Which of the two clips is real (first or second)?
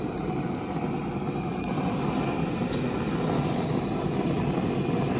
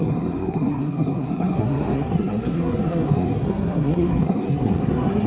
first